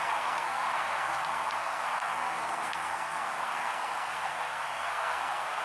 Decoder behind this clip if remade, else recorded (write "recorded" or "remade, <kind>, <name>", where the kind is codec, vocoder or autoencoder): remade, codec, SNAC